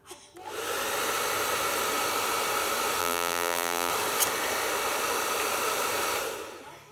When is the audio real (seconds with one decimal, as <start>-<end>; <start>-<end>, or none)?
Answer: 0.0-3.0; 3.9-6.9